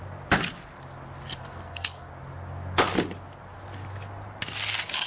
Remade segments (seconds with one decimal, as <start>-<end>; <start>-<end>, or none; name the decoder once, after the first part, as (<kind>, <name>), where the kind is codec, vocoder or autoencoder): 1.4-2.1 (codec, SNAC)